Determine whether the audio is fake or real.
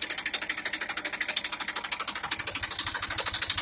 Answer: real